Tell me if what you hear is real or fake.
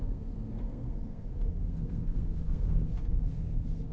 fake